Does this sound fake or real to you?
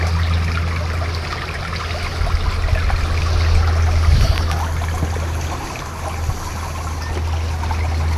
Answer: real